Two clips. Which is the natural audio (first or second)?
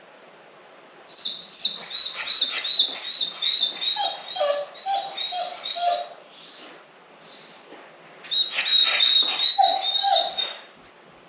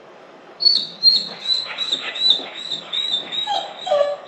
first